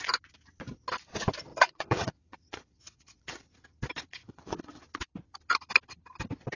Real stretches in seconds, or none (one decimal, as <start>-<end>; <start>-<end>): 0.0-1.5; 3.4-4.1; 4.8-6.5